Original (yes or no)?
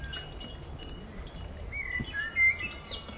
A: yes